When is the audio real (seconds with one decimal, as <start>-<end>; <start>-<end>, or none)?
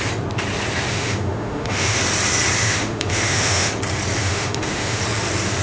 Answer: 0.0-0.9; 2.0-2.6; 3.7-4.2; 5.0-5.6